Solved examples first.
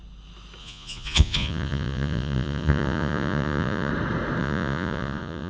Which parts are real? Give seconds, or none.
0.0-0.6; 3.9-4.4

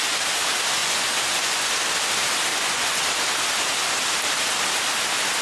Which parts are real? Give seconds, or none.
0.0-0.8; 1.7-2.5; 3.0-5.4

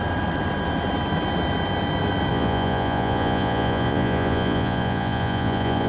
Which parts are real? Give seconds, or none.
0.0-2.3